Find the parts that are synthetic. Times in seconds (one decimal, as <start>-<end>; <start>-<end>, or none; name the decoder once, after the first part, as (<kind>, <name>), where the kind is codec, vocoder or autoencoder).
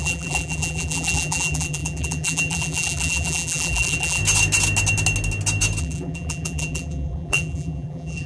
0.0-4.2 (vocoder, BigVGAN v2); 5.8-8.3